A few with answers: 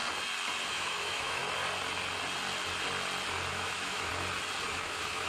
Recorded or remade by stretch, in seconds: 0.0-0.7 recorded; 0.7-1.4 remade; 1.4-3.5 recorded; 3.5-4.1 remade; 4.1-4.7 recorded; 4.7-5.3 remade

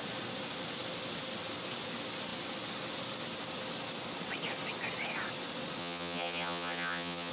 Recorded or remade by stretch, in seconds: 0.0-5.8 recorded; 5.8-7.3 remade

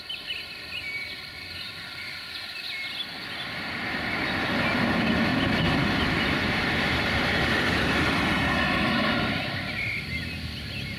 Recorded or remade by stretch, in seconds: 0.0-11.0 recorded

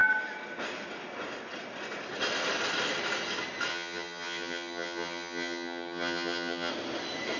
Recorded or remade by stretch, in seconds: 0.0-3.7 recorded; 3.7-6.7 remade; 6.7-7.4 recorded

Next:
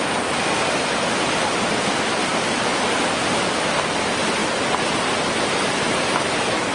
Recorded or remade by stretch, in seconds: 0.0-6.7 recorded

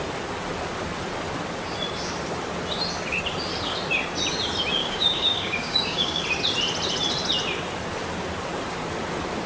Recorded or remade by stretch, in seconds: 0.0-4.8 recorded; 4.8-6.2 remade; 6.2-9.5 recorded

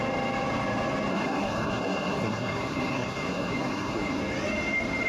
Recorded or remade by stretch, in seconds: 0.0-1.1 recorded; 1.1-4.2 remade; 4.2-5.1 recorded